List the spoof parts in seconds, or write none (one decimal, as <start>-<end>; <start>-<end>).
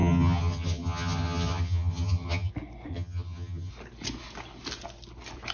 0.0-2.5; 2.9-3.7